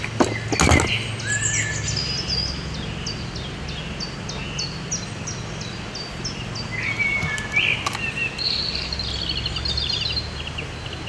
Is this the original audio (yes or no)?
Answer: yes